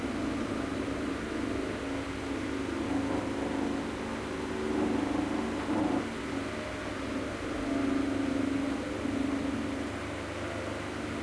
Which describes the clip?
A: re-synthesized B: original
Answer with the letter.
B